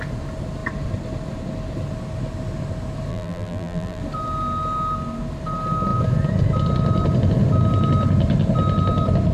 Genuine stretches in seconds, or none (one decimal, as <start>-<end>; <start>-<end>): 0.0-3.1; 4.0-9.3